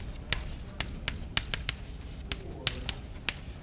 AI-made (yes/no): no